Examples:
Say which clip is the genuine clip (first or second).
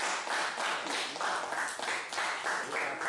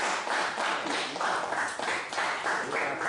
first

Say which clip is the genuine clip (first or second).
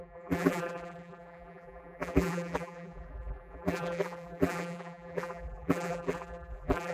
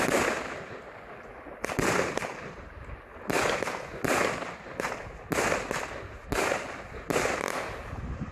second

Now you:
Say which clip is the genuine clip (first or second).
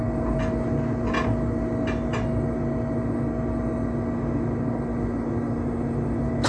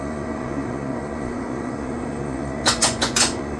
first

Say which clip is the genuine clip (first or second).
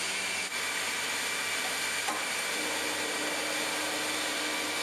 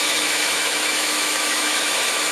first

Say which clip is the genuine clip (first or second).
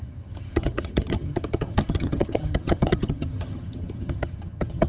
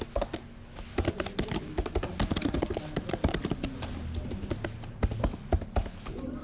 second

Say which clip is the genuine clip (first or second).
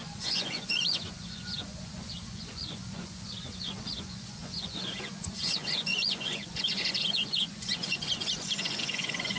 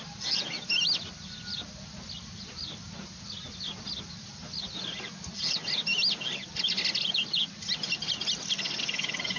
second